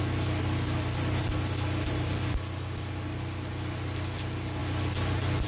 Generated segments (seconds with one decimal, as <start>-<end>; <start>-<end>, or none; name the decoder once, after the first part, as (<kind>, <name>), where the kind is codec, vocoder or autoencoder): none